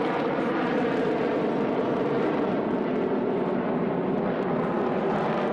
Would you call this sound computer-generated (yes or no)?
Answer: no